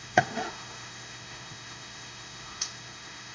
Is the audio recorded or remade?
remade